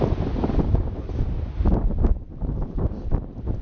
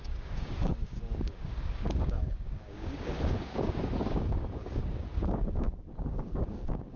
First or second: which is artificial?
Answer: second